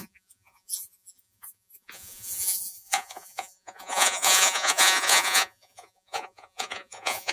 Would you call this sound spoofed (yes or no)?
yes